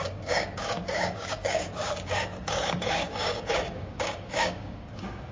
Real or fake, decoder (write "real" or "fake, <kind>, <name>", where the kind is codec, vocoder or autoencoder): fake, codec, DAC